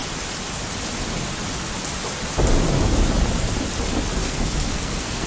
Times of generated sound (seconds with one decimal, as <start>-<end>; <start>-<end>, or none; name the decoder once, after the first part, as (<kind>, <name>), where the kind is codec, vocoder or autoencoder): 4.2-5.3 (codec, SNAC)